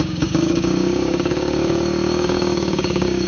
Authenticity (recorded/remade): remade